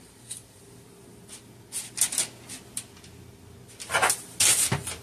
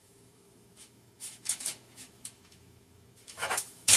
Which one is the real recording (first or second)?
first